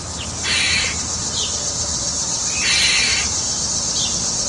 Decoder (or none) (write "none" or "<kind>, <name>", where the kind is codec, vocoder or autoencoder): none